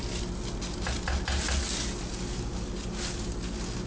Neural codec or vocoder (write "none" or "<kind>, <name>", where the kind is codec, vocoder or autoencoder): none